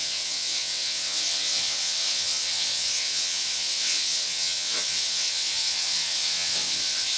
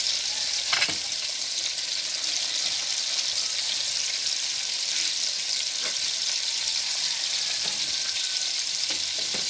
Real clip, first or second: second